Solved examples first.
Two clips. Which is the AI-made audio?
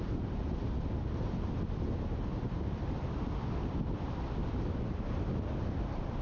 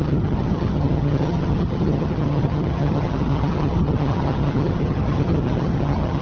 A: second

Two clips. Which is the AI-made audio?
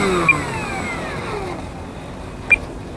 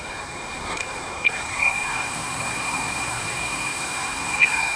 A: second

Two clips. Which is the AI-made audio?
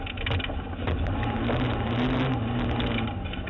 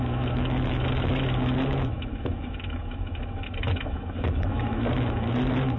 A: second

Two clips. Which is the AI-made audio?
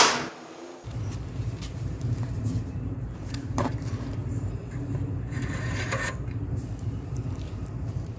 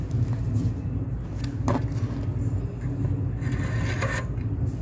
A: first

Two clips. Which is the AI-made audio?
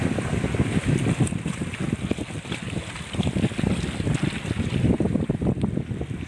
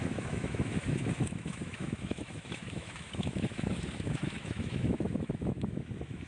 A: second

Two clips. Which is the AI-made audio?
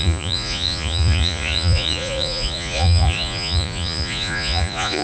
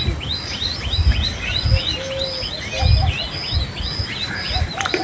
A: first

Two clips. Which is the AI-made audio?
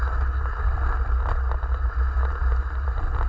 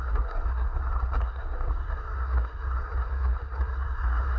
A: second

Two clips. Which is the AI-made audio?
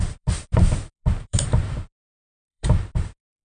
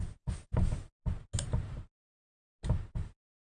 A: first